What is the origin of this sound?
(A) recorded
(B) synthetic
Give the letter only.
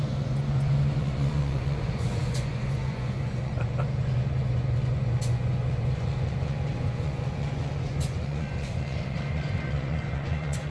B